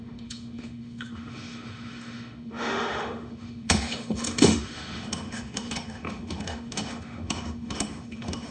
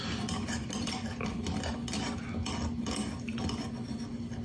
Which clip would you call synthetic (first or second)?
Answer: first